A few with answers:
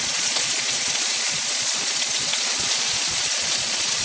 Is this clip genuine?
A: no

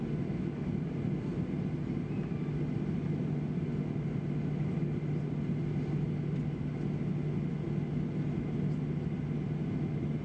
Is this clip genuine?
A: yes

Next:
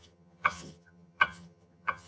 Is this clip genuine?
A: no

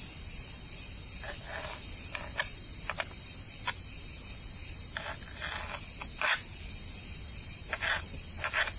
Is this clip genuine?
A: yes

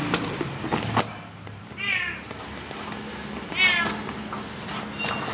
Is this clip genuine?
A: yes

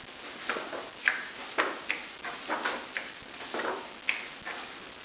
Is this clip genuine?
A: yes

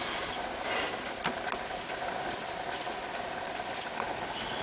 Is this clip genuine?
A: yes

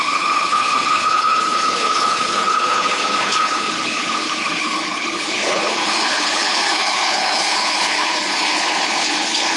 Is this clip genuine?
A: no